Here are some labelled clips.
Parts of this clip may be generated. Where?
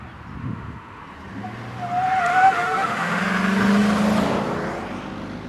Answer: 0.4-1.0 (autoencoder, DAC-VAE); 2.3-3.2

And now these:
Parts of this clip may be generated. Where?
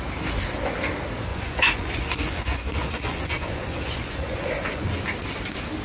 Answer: 1.3-4.8 (vocoder, Vocos)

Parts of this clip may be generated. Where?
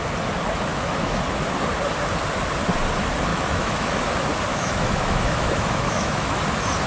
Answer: 0.7-1.2 (autoencoder, DAC-VAE); 3.3-4.1; 4.5-6.4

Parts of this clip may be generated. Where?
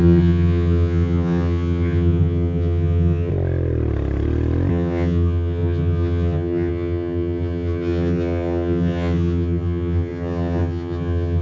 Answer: 0.0-3.3 (vocoder, HiFi-GAN); 4.7-11.4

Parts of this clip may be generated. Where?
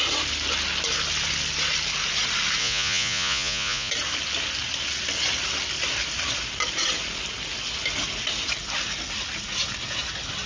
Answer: 2.6-3.9 (vocoder, Vocos)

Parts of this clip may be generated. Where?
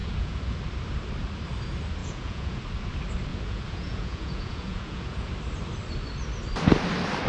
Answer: 0.0-0.6 (vocoder, Vocos); 2.0-2.6; 3.3-5.3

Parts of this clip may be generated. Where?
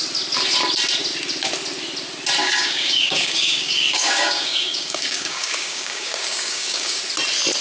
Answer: 2.4-7.0 (codec, DAC)